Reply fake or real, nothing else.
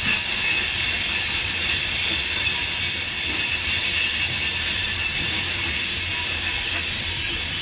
real